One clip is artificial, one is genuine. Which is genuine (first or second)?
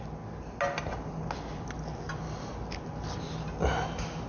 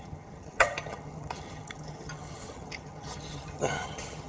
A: first